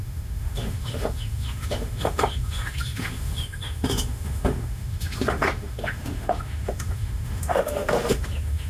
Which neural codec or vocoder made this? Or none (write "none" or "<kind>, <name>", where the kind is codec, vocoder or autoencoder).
autoencoder, DAC-VAE